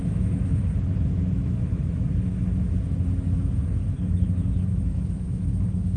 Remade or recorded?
remade